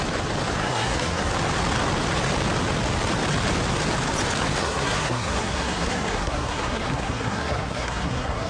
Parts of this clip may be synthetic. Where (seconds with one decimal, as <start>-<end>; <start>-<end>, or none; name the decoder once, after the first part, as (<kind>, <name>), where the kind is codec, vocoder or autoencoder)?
0.6-1.3 (codec, SNAC); 4.6-8.5